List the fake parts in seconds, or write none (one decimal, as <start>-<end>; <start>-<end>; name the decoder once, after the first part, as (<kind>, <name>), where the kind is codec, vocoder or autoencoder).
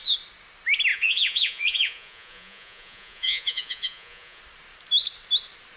0.9-4.4 (vocoder, Vocos)